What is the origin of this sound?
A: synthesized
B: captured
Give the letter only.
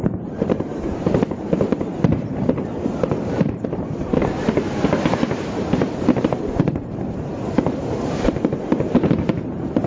A